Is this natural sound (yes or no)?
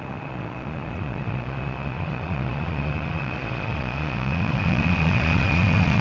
no